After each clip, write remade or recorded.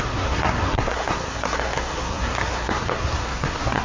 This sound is remade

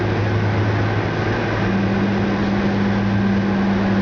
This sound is recorded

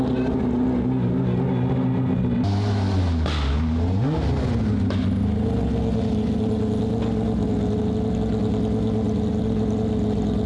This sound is recorded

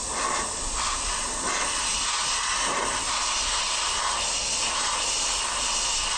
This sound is recorded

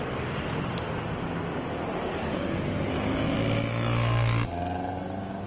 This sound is recorded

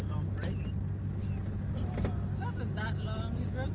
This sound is recorded